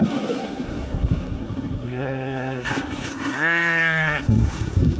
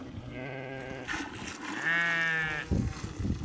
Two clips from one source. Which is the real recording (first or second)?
second